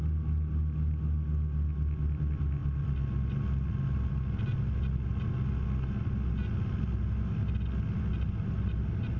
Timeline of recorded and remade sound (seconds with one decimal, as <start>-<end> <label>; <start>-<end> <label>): 0.0-9.2 recorded